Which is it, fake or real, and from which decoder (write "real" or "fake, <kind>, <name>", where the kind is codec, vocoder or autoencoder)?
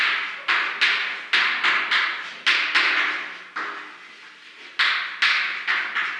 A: real